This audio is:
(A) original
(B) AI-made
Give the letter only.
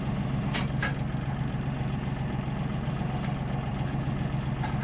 A